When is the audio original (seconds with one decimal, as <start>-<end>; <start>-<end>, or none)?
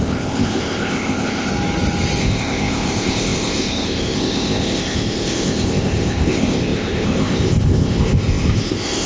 1.5-2.2